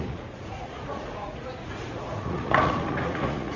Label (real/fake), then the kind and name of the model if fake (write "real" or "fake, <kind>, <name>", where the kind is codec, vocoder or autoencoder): fake, vocoder, Vocos